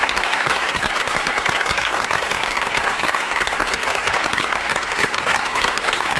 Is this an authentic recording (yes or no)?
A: no